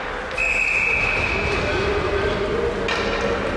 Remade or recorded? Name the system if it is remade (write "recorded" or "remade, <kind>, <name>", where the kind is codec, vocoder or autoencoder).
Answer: recorded